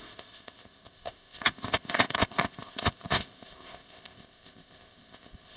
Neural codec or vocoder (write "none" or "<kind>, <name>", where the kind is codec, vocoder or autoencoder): codec, ZipCodec